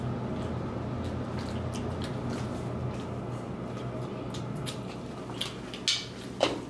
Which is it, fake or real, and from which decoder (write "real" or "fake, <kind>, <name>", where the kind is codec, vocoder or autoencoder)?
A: real